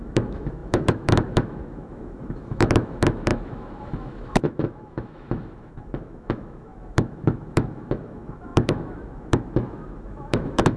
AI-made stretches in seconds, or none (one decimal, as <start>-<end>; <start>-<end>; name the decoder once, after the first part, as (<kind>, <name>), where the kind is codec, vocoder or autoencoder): 0.0-10.8 (autoencoder, DAC-VAE)